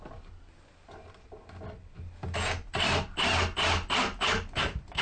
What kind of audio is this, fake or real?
real